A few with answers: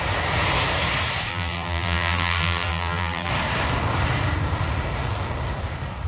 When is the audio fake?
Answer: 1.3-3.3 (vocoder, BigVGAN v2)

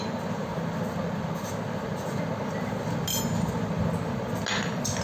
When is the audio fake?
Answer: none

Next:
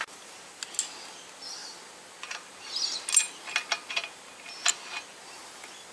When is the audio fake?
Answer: none